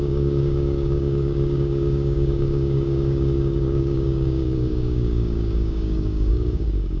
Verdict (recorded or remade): remade